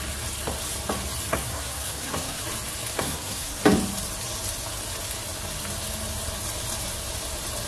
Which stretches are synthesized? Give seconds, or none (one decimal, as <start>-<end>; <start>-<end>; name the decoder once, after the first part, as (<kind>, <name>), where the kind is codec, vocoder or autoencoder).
1.3-2.4 (codec, SNAC); 2.9-3.6